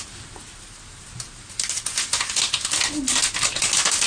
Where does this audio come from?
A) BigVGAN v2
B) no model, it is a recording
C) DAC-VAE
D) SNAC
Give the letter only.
B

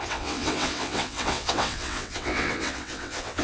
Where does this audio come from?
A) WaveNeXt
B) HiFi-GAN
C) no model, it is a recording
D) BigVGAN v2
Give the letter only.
A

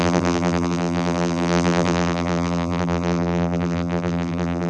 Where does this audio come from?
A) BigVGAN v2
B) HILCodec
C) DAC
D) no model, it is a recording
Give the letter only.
A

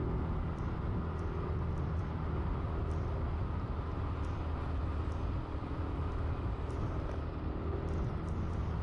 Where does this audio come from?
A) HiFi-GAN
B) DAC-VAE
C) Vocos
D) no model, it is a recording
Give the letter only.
D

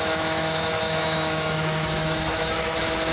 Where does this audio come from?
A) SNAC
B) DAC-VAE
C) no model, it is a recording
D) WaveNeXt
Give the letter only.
B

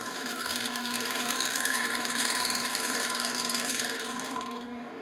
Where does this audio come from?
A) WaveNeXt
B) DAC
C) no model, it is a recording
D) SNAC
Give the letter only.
B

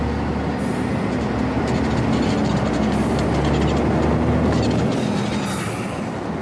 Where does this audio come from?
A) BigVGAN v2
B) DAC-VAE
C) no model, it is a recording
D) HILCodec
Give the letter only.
C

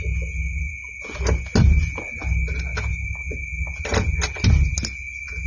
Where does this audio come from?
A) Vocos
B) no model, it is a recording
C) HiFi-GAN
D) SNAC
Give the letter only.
B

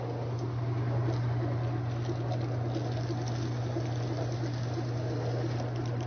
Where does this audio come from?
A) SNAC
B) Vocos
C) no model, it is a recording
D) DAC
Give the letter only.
C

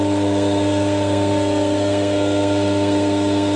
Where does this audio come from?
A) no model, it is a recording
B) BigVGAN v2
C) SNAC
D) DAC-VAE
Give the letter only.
C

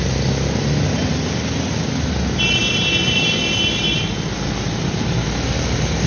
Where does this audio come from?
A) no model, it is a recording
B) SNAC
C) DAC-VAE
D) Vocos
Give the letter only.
A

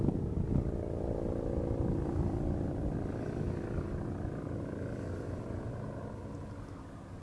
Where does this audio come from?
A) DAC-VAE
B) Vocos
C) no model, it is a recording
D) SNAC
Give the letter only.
C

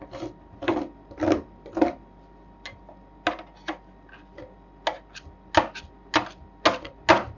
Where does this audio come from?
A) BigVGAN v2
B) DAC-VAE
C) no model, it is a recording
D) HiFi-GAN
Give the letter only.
C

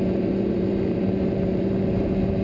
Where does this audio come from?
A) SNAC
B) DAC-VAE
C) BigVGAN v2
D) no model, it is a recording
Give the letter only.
C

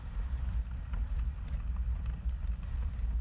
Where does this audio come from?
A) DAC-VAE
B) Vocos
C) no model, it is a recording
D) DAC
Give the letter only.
C